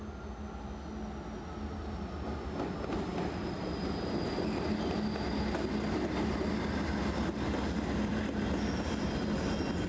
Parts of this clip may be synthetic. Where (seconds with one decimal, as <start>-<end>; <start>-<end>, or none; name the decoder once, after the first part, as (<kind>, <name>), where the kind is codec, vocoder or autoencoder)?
none